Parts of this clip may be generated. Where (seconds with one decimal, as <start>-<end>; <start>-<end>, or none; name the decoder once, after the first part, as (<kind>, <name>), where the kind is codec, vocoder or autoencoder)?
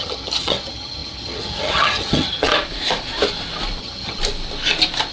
0.0-2.5 (vocoder, HiFi-GAN); 3.8-4.2